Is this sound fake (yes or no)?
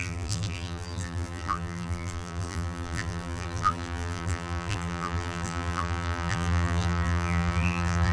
yes